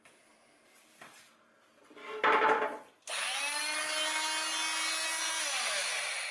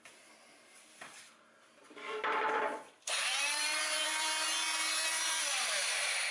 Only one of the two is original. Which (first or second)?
first